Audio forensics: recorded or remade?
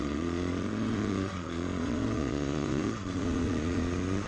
remade